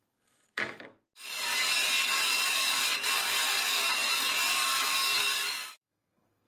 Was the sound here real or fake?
fake